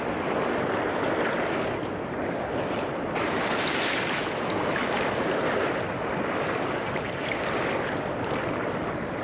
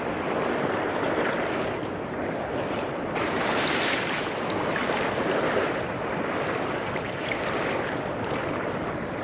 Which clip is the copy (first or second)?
second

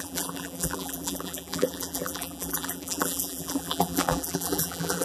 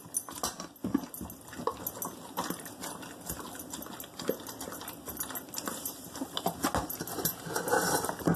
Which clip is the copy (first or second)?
first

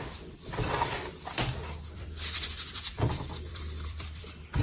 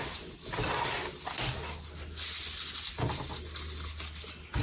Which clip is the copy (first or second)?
first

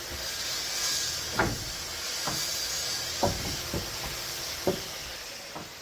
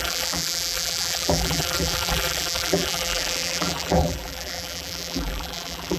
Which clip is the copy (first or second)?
second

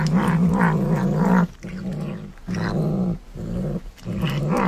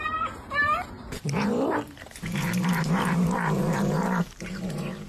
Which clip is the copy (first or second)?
second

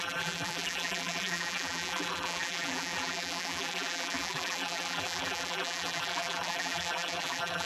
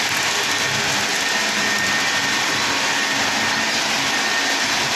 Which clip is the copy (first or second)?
first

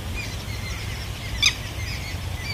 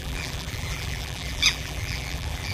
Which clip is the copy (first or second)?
second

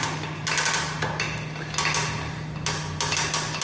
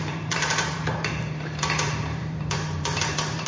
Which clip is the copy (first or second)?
second